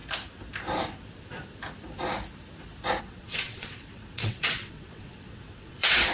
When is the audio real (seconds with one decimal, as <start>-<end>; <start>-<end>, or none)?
0.0-3.0